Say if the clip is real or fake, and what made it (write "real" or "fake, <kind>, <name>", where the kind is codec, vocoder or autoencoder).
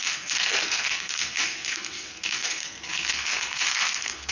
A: fake, codec, SNAC